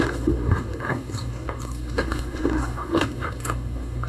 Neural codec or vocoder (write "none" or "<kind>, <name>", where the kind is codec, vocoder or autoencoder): codec, SNAC